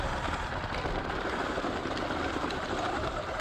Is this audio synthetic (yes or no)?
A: no